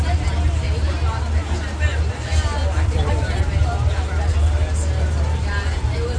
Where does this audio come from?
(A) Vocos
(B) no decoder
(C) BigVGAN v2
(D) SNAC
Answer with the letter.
B